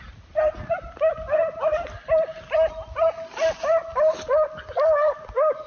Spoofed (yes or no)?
no